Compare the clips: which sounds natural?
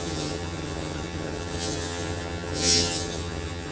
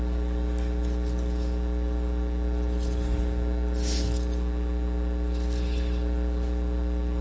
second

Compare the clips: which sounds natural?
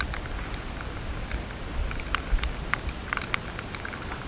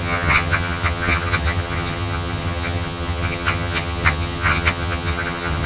first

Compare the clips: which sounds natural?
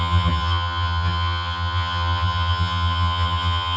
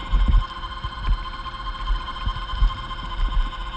second